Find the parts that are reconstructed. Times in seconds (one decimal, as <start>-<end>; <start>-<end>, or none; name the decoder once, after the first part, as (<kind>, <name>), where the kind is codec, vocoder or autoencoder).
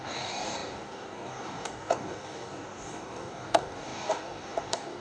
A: 0.0-5.0 (codec, DAC)